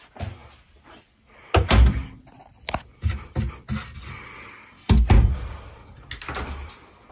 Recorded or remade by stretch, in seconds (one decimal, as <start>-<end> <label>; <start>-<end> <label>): 0.0-7.1 recorded